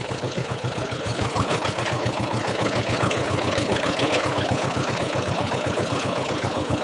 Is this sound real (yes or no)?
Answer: no